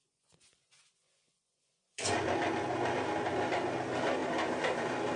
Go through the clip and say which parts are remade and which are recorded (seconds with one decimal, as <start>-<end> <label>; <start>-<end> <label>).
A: 0.0-2.1 remade; 2.1-5.2 recorded